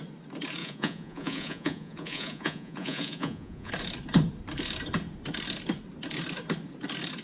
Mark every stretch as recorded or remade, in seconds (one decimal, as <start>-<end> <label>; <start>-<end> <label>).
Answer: 0.0-0.6 recorded; 0.6-3.7 remade; 3.7-7.2 recorded